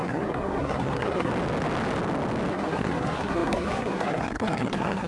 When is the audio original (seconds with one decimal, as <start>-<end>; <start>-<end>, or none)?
1.3-2.5